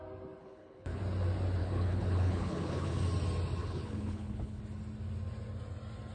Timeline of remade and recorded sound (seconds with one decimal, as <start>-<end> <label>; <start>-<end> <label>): 0.0-0.4 recorded; 0.4-1.0 remade; 1.0-1.6 recorded; 1.6-3.0 remade; 3.0-3.6 recorded; 3.6-4.6 remade; 4.6-6.1 recorded

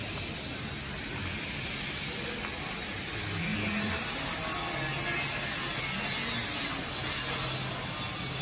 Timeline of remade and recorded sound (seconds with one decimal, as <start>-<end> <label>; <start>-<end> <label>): 0.0-8.4 recorded

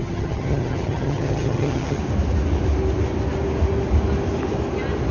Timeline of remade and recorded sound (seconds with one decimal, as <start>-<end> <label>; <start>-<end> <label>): 0.0-2.0 remade; 2.0-5.1 recorded

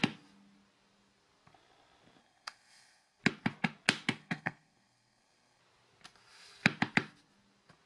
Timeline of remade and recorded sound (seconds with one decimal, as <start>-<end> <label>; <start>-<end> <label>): 0.0-2.2 recorded; 2.2-3.2 remade; 3.2-4.2 recorded; 4.2-5.6 remade; 5.6-7.9 recorded

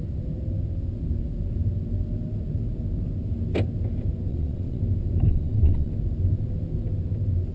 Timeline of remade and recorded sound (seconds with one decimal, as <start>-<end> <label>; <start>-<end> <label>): 0.0-4.3 recorded; 4.3-4.8 remade; 4.8-5.3 recorded; 5.3-5.9 remade; 5.9-7.5 recorded

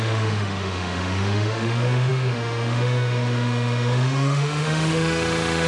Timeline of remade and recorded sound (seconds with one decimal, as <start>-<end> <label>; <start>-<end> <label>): 0.0-5.7 remade

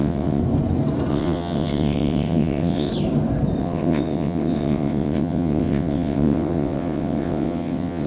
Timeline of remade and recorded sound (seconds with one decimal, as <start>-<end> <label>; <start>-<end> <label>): 0.0-0.4 remade; 0.4-1.1 recorded; 1.1-2.9 remade; 2.9-3.6 recorded; 3.6-8.1 remade

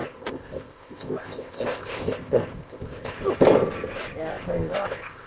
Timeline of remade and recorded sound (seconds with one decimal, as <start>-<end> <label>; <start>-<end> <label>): 0.0-3.2 remade; 3.2-4.3 recorded; 4.3-5.3 remade